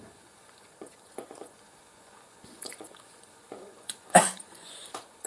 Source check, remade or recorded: remade